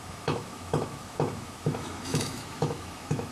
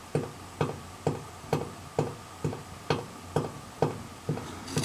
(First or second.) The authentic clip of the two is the second